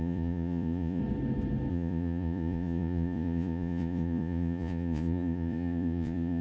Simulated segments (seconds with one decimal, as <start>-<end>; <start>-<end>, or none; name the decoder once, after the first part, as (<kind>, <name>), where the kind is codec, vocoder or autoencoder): 0.0-1.0 (vocoder, Vocos); 1.7-6.4